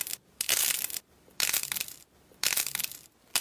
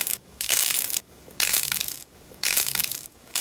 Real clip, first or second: first